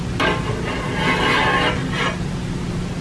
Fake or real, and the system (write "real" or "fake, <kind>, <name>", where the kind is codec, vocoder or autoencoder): real